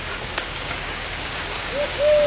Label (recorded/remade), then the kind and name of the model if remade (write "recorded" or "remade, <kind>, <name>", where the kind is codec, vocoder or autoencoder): remade, codec, DAC